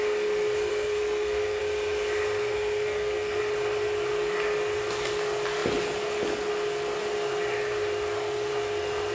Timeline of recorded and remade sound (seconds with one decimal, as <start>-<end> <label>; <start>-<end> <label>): 0.0-0.7 recorded; 0.7-1.6 remade; 1.6-2.4 recorded; 2.4-3.4 remade; 3.4-9.1 recorded